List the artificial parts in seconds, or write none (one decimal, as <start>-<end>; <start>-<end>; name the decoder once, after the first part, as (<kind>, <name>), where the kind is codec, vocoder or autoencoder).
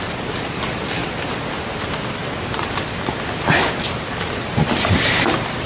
0.0-1.0 (vocoder, BigVGAN v2); 1.8-2.2; 4.0-5.7